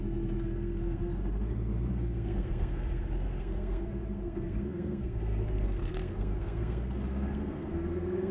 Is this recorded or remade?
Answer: remade